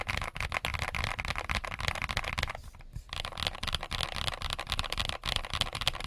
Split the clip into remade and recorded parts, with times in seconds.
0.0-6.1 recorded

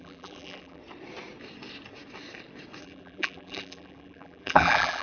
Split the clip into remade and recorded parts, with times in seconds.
0.0-0.8 remade; 0.8-2.8 recorded; 2.8-5.0 remade

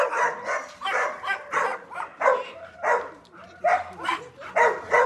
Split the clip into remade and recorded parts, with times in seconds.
0.0-1.7 recorded; 1.7-3.3 remade; 3.3-5.1 recorded

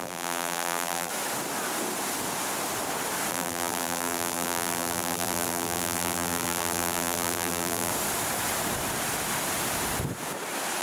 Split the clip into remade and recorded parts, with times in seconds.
0.0-1.1 remade; 1.1-3.3 recorded; 3.3-7.9 remade; 7.9-10.8 recorded

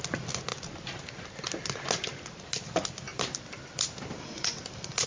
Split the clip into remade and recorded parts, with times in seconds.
0.0-3.1 recorded; 3.1-4.6 remade; 4.6-5.1 recorded